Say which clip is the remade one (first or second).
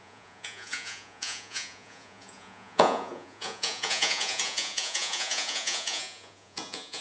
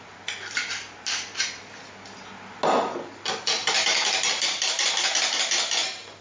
first